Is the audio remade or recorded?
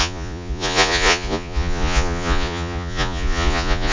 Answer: remade